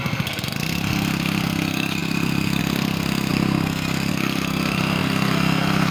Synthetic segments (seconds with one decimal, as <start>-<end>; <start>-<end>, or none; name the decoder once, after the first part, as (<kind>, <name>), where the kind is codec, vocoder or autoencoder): 0.0-5.9 (codec, SNAC)